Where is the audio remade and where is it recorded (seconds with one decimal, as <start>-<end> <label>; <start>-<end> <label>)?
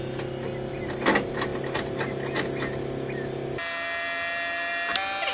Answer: 0.0-5.3 recorded